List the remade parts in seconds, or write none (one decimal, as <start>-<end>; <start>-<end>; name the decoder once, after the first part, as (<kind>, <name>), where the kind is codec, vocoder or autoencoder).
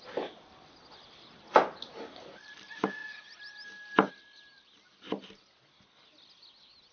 none